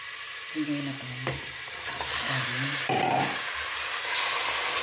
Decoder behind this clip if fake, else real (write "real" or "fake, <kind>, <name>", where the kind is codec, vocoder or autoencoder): real